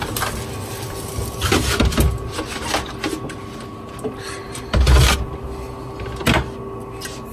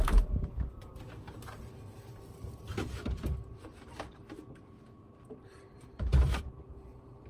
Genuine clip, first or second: first